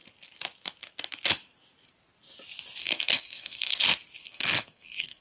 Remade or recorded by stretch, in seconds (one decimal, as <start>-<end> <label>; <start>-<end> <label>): 0.0-2.8 recorded; 2.8-3.8 remade; 3.8-4.2 recorded; 4.2-5.2 remade